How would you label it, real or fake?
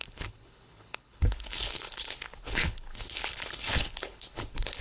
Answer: fake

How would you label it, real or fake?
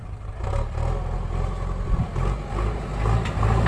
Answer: real